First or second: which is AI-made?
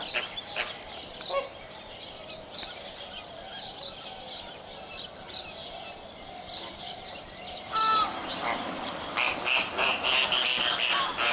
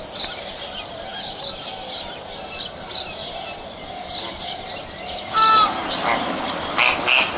first